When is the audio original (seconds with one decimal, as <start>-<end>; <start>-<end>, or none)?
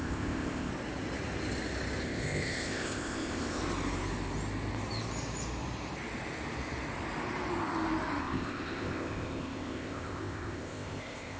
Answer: 0.7-2.0; 3.6-8.2